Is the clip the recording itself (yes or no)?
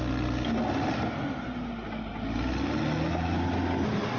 yes